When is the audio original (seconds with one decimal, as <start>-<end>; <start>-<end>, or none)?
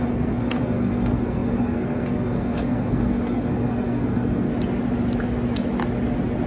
4.5-6.5